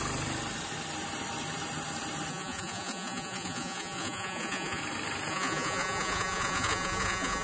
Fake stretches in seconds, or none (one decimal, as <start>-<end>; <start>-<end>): 2.3-4.8; 5.3-7.4